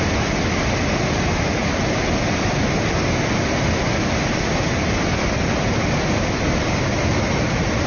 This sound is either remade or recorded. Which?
recorded